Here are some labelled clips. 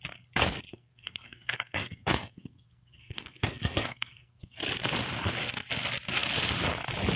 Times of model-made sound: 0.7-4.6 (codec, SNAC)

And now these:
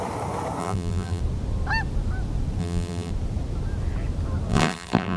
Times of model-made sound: 0.6-1.2 (vocoder, BigVGAN v2); 2.6-3.1; 4.5-5.2